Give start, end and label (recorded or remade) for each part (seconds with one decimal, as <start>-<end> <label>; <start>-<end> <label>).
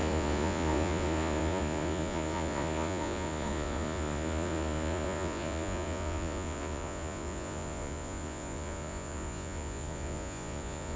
0.0-11.0 remade